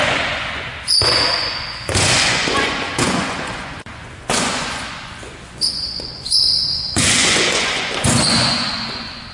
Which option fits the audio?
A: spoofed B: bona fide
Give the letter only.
A